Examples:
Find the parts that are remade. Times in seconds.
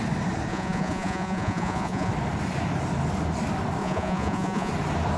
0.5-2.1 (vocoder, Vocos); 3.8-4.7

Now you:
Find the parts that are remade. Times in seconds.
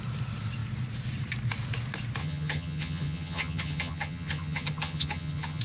2.2-5.6 (vocoder, HiFi-GAN)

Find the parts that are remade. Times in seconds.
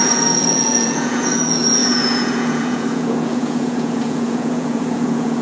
0.0-5.4 (vocoder, Vocos)